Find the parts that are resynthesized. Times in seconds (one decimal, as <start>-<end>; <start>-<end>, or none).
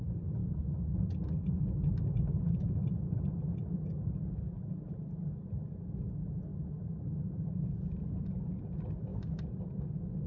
6.5-8.3; 9.1-10.3